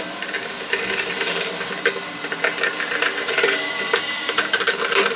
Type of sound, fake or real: real